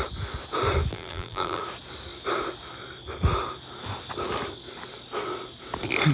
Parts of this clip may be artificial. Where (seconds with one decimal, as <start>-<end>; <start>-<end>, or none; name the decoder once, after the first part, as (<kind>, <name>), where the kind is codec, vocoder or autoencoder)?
0.9-1.6 (vocoder, BigVGAN v2)